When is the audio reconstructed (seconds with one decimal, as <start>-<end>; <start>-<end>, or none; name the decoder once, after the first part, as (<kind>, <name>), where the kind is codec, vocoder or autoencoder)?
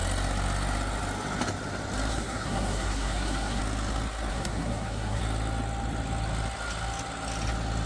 2.1-3.6 (codec, SNAC); 4.3-5.2